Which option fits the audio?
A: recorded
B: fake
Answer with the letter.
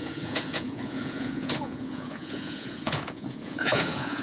B